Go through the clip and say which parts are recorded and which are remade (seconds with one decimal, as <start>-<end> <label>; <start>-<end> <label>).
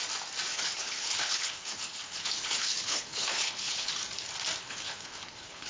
0.0-0.5 recorded; 0.5-3.9 remade; 3.9-4.6 recorded; 4.6-5.7 remade